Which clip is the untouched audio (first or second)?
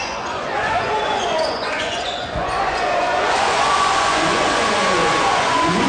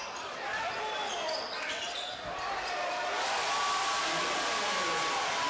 second